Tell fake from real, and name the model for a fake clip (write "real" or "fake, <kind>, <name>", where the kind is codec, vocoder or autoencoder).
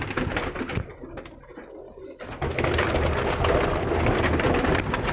real